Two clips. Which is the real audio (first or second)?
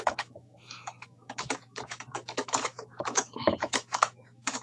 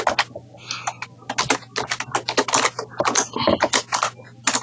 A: second